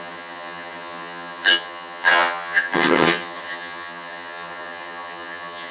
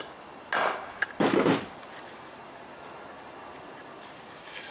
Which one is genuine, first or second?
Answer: second